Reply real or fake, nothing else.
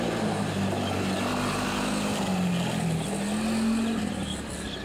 real